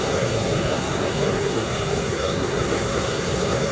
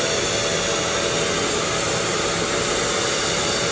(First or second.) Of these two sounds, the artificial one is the first